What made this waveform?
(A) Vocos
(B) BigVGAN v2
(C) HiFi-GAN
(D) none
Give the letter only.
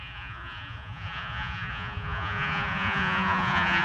A